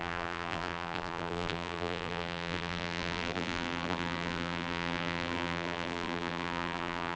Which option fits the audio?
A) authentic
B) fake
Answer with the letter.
B